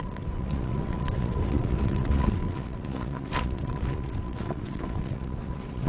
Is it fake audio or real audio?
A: fake